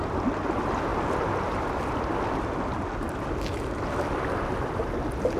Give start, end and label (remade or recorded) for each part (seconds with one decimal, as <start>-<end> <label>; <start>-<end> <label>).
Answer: 0.0-5.4 recorded